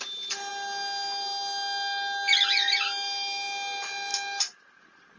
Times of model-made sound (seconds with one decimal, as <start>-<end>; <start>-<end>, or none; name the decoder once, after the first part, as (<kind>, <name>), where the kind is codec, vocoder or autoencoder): none